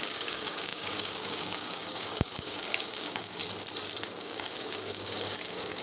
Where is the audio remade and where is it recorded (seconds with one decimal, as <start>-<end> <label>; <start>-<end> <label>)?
0.0-3.4 remade; 3.4-4.0 recorded; 4.0-5.8 remade